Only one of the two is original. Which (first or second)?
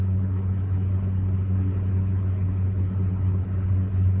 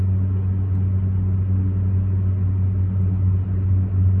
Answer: second